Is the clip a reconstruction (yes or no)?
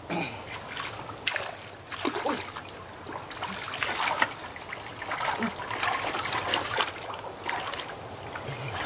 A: no